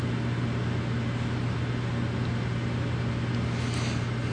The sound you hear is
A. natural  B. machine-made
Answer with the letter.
A